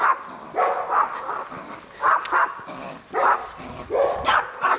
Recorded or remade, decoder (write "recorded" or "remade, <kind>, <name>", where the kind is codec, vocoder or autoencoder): recorded